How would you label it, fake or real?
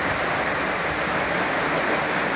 real